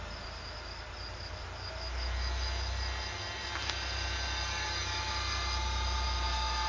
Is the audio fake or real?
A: real